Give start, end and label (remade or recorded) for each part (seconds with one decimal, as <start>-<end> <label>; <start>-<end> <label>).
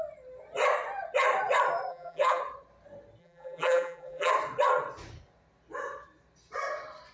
0.0-1.9 recorded; 1.9-2.4 remade; 2.4-3.2 recorded; 3.2-4.3 remade; 4.3-7.1 recorded